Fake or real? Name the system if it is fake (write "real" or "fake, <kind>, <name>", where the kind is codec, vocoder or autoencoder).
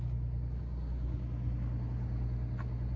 real